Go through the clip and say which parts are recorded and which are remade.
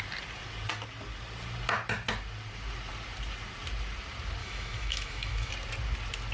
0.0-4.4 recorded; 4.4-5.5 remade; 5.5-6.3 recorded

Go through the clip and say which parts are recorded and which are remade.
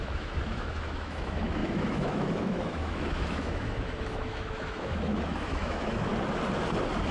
0.0-6.1 remade; 6.1-7.1 recorded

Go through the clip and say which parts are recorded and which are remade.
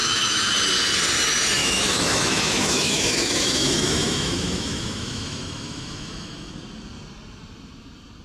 0.0-0.5 remade; 0.5-1.6 recorded; 1.6-6.5 remade; 6.5-8.2 recorded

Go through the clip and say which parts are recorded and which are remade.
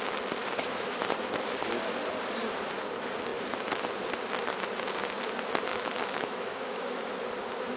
0.0-0.4 recorded; 0.4-1.0 remade; 1.0-5.7 recorded; 5.7-7.1 remade; 7.1-7.8 recorded